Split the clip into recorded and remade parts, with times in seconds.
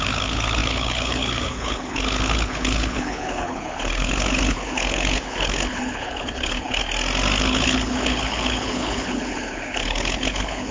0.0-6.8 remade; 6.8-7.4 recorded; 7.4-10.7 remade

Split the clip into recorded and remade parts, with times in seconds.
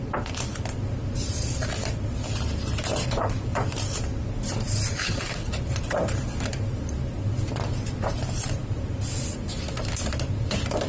0.0-4.9 recorded; 4.9-5.5 remade; 5.5-10.9 recorded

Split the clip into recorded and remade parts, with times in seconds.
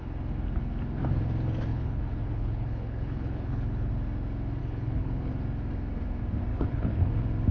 0.0-1.7 recorded; 1.7-3.9 remade; 3.9-4.6 recorded; 4.6-5.3 remade; 5.3-6.5 recorded; 6.5-7.1 remade; 7.1-7.5 recorded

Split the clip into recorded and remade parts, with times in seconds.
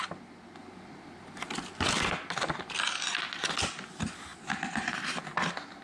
0.0-5.8 recorded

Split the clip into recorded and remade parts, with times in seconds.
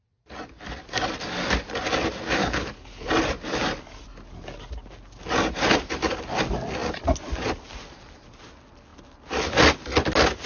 0.0-2.4 recorded; 2.4-3.1 remade; 3.1-10.5 recorded